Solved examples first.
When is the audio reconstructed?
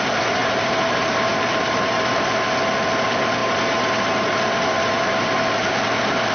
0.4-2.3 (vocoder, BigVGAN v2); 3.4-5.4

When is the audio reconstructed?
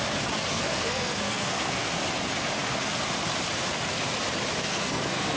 0.5-1.9 (codec, SNAC); 4.6-5.4